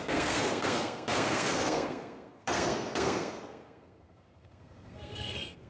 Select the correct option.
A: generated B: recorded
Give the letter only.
A